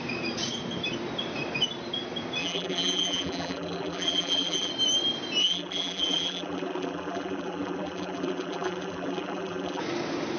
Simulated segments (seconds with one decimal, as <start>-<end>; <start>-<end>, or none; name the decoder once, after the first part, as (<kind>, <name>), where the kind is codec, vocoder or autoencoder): 2.4-4.7 (vocoder, BigVGAN v2); 5.4-9.8